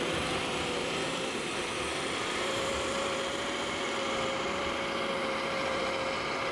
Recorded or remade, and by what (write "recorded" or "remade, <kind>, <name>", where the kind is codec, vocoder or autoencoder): remade, vocoder, BigVGAN v2